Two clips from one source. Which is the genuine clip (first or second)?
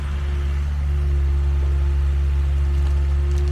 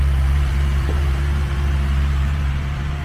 first